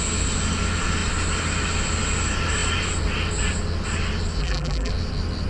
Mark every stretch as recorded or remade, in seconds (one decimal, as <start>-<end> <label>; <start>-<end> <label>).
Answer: 0.0-4.4 recorded; 4.4-4.9 remade; 4.9-5.5 recorded